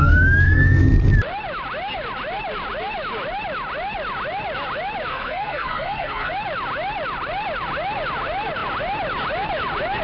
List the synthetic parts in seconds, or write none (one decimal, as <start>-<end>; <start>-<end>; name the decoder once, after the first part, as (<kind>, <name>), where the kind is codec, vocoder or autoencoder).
0.0-0.8 (codec, SNAC); 5.1-6.3